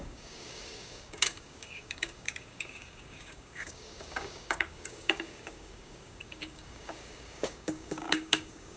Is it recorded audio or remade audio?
remade